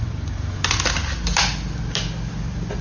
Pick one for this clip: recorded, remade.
recorded